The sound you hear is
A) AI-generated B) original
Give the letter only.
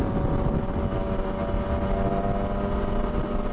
B